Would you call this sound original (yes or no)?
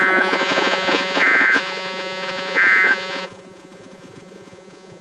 no